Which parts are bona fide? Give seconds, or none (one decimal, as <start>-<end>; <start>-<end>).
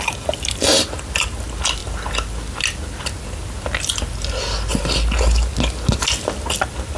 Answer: 0.0-7.0